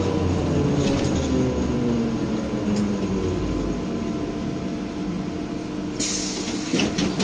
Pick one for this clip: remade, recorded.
recorded